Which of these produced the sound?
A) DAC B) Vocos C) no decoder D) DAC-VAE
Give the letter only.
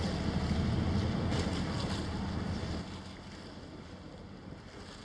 C